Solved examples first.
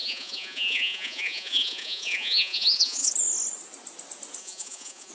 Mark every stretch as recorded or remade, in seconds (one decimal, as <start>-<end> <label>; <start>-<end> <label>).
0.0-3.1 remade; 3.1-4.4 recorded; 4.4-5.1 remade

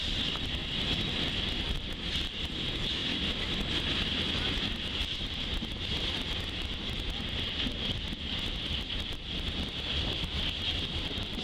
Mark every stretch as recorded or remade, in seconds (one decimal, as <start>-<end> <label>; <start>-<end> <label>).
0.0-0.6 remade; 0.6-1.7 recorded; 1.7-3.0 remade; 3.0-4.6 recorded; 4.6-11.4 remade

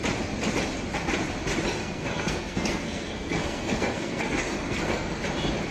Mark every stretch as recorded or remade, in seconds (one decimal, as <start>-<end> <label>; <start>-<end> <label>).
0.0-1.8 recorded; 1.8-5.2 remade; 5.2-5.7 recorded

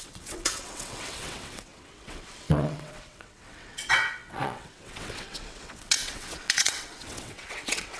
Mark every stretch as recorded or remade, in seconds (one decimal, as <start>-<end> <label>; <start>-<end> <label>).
0.0-8.0 remade